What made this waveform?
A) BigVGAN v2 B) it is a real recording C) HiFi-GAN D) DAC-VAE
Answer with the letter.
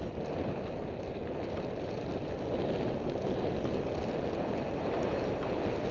B